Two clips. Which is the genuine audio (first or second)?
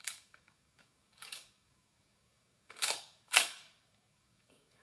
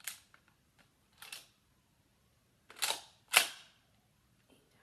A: second